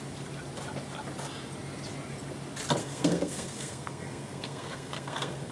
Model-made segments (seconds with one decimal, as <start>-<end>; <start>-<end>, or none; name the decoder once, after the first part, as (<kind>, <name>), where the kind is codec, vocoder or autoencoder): 2.8-5.5 (codec, SNAC)